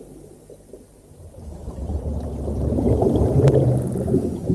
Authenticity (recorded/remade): remade